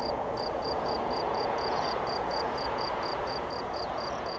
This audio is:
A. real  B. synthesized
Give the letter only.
B